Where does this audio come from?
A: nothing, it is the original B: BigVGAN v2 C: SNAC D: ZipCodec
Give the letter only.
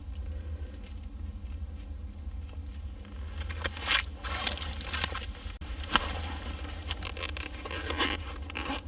A